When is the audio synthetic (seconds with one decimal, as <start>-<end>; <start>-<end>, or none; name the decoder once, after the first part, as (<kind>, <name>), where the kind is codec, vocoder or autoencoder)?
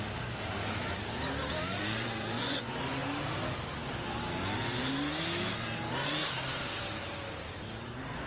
1.7-2.7 (vocoder, Vocos)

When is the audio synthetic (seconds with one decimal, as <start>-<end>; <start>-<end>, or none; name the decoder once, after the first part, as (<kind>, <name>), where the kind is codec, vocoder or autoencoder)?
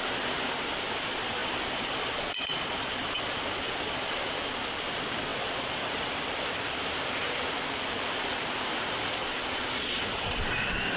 1.4-4.3 (vocoder, Vocos); 9.2-11.0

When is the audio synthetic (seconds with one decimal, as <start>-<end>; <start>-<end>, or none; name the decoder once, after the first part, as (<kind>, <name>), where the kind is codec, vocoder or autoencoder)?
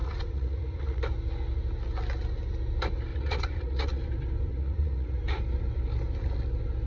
0.0-1.0 (vocoder, Vocos); 3.1-4.0; 4.5-5.2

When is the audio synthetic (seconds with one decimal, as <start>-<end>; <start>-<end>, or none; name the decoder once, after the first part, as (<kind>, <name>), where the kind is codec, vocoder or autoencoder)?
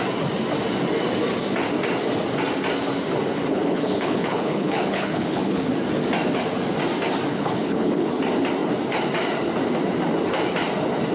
3.5-5.7 (codec, HILCodec); 7.3-8.1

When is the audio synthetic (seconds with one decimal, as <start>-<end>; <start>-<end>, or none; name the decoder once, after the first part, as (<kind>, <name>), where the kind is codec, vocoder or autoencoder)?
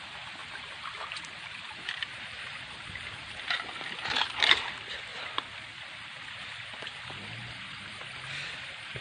0.0-9.0 (vocoder, BigVGAN v2)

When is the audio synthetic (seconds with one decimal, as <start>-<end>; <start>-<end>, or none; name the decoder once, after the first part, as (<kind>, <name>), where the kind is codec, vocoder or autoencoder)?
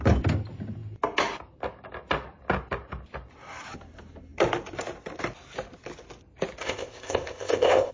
6.6-7.9 (codec, ZipCodec)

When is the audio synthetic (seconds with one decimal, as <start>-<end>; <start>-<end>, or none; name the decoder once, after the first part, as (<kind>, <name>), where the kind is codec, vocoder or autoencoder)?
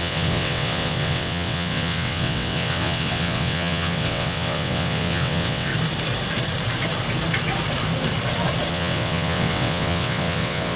0.0-5.7 (vocoder, WaveNeXt); 8.7-10.8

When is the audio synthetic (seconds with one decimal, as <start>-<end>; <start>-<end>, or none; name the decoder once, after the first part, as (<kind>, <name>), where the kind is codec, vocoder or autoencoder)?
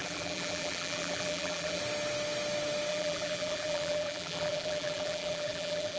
0.0-1.8 (vocoder, BigVGAN v2); 2.9-6.0